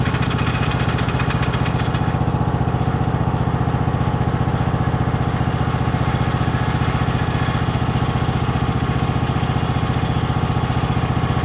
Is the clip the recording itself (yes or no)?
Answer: yes